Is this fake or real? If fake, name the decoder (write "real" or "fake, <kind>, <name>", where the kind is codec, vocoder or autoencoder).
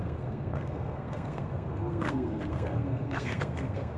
fake, codec, SNAC